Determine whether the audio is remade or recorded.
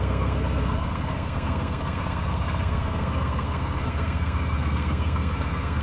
remade